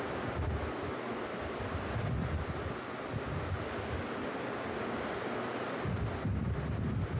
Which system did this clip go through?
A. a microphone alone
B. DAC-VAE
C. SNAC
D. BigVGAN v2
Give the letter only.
A